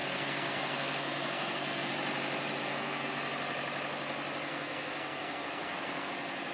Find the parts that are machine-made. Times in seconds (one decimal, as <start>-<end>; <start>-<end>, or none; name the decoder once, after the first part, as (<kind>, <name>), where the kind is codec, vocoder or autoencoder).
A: 0.0-1.9 (codec, SNAC); 2.6-3.1; 4.5-6.1